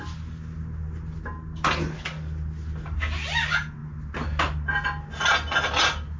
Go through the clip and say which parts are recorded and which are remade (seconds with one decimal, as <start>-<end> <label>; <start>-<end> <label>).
0.0-6.2 recorded